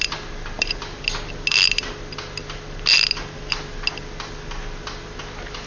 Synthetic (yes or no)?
no